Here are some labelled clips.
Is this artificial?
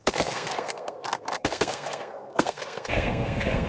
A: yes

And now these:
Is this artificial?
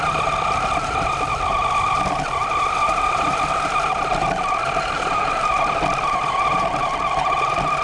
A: no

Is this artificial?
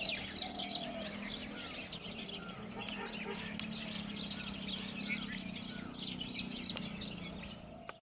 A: no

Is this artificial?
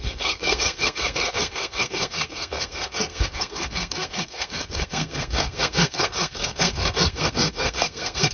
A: yes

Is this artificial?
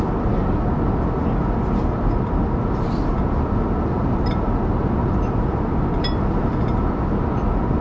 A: no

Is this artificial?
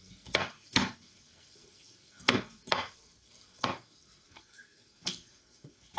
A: yes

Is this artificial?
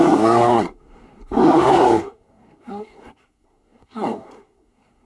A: yes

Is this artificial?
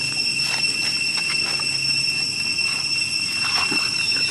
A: no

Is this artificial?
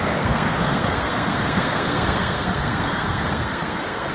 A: yes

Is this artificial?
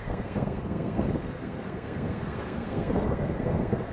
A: yes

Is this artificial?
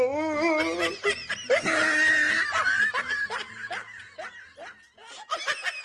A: no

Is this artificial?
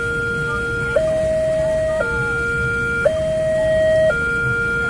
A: no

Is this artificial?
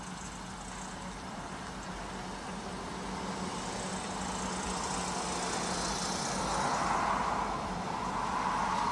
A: no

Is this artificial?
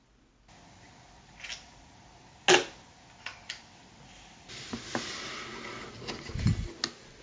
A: no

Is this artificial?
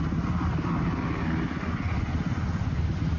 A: no